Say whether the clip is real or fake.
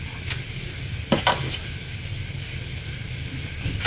real